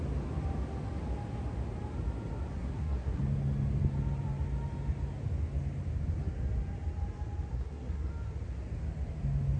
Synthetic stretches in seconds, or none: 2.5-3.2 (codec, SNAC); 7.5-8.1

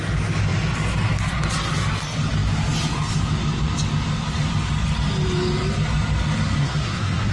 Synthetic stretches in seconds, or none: 6.6-7.3 (codec, SNAC)

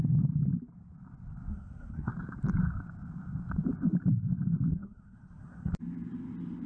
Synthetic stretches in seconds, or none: 1.5-2.1 (codec, SNAC); 4.7-5.7